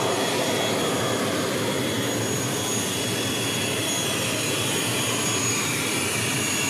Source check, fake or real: real